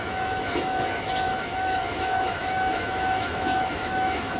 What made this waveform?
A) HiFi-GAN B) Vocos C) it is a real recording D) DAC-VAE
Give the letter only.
D